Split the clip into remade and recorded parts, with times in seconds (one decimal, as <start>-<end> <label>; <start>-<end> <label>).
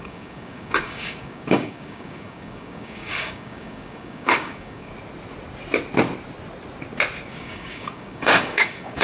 0.0-4.9 remade; 4.9-7.3 recorded; 7.3-9.0 remade